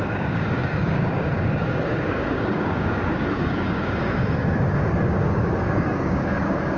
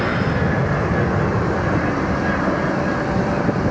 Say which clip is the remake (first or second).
first